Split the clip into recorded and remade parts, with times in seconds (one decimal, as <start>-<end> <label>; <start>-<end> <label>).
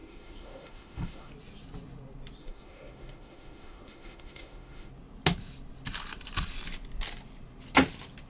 0.0-1.3 remade; 1.3-2.4 recorded; 2.4-4.9 remade; 4.9-8.3 recorded